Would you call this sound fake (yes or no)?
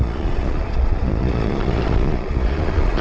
yes